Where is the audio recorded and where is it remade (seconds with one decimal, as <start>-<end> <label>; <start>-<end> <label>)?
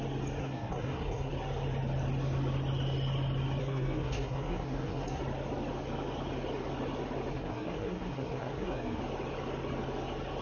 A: 0.0-0.4 recorded; 0.4-1.3 remade; 1.3-3.6 recorded; 3.6-5.2 remade; 5.2-7.3 recorded; 7.3-9.0 remade; 9.0-10.4 recorded